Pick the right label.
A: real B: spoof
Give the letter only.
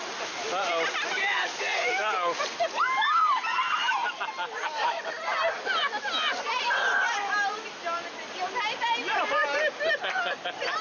A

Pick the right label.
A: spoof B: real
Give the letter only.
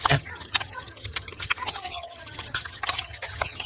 A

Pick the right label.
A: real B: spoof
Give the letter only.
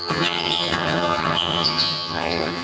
B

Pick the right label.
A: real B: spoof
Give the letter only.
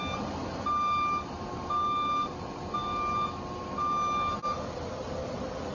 A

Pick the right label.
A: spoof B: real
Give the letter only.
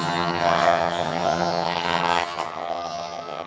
A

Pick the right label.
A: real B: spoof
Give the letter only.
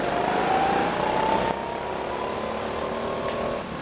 A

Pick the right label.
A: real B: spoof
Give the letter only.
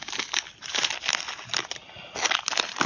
A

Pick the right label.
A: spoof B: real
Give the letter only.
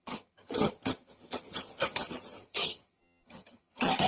A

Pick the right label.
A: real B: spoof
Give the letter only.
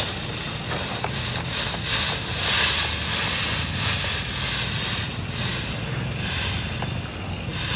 A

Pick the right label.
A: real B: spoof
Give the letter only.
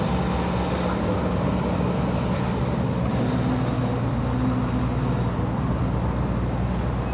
A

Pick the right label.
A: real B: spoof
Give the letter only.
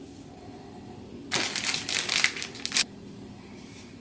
A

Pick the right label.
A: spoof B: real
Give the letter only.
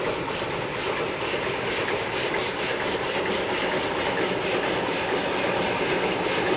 B